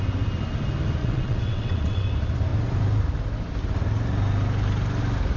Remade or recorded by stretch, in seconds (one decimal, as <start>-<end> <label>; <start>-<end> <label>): 0.0-1.0 recorded; 1.0-2.1 remade; 2.1-5.4 recorded